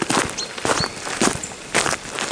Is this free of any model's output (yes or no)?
yes